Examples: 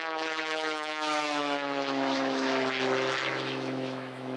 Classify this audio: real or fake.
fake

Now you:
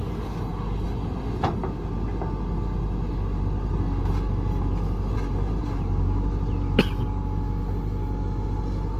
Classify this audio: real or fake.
real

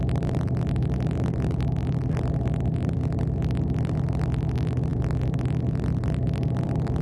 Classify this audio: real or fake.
real